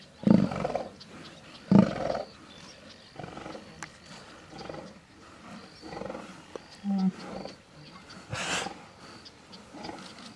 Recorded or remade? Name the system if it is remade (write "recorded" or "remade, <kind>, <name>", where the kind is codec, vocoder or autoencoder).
recorded